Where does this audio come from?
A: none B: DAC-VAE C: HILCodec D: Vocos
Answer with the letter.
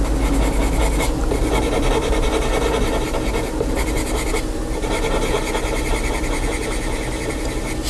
A